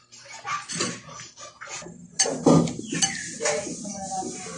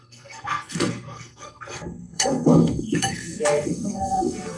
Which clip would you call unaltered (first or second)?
first